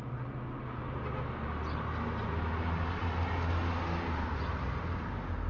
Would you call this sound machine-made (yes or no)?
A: no